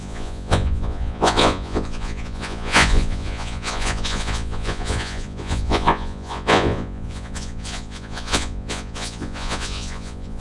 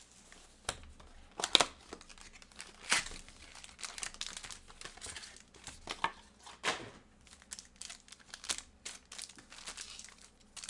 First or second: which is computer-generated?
first